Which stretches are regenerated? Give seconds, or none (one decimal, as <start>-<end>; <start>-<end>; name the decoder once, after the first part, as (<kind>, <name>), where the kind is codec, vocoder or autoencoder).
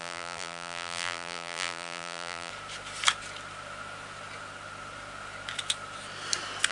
0.0-2.5 (vocoder, BigVGAN v2)